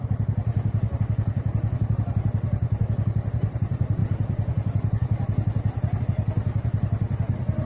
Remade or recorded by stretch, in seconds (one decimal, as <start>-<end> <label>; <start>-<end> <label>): 0.0-7.6 recorded